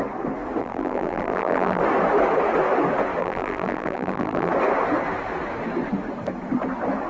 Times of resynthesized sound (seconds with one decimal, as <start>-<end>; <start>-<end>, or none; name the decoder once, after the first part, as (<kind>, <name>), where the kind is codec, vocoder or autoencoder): 0.6-1.8 (vocoder, BigVGAN v2); 3.2-4.5